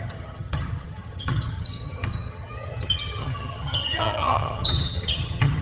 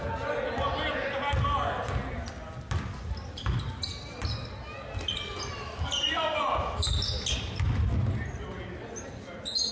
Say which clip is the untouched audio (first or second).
second